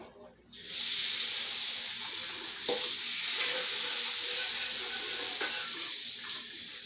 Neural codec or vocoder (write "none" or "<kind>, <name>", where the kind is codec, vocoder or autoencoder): none